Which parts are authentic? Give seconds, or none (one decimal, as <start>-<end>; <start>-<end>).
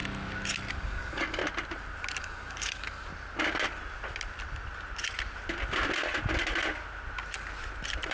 0.0-0.7; 1.4-2.2; 3.1-8.1